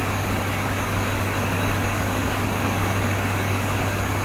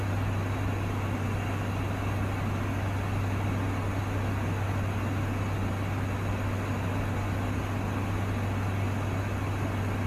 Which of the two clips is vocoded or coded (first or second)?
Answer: first